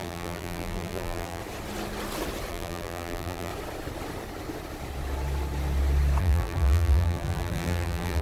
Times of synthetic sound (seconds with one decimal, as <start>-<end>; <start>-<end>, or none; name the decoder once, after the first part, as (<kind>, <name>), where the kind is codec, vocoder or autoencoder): 0.0-1.4 (vocoder, BigVGAN v2); 2.5-3.5; 6.2-8.2